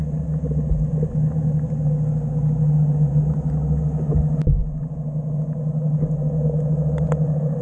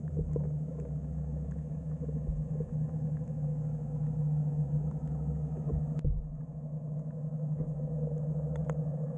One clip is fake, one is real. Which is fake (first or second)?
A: second